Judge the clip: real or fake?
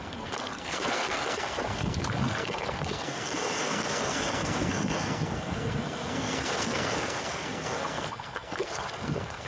fake